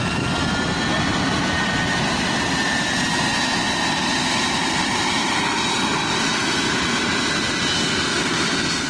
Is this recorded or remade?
recorded